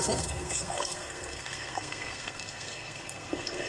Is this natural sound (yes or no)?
no